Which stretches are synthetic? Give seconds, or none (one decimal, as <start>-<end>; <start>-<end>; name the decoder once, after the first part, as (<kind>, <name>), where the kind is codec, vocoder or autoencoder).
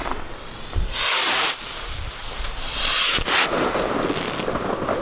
1.2-3.3 (vocoder, BigVGAN v2)